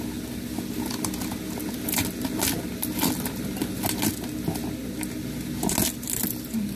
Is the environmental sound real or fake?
real